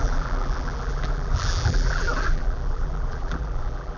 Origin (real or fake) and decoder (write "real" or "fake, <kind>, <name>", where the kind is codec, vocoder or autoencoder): fake, vocoder, BigVGAN v2